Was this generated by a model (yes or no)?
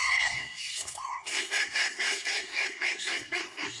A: yes